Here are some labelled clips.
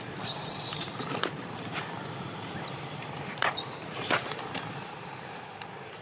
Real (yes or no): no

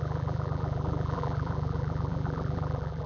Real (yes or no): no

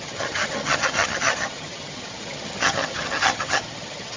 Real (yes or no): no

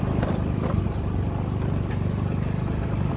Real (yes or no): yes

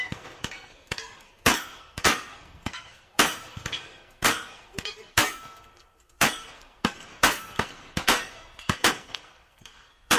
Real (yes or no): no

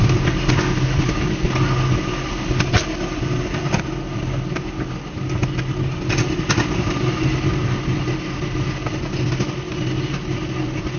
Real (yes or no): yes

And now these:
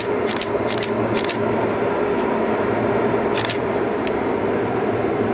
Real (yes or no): yes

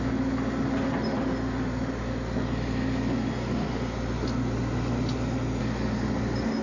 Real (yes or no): yes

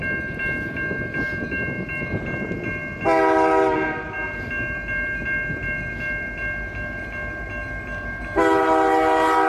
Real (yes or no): yes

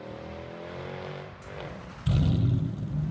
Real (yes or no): no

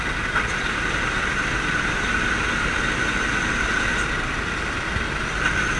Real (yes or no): yes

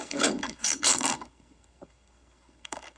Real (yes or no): no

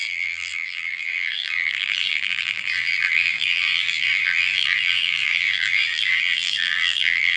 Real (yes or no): no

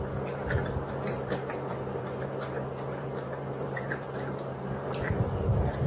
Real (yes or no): no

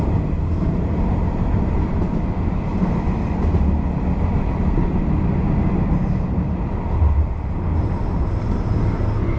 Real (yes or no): yes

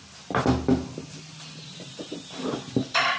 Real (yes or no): yes